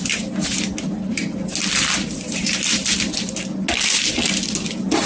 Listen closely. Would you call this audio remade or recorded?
recorded